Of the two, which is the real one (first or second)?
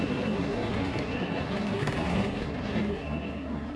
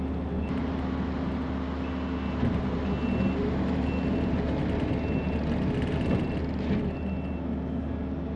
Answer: second